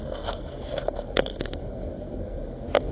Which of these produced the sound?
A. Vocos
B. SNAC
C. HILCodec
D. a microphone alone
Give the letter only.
B